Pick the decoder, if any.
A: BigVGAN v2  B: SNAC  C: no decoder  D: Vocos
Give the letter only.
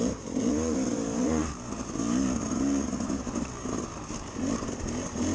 A